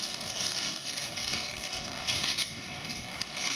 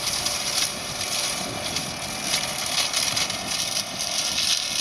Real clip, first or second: second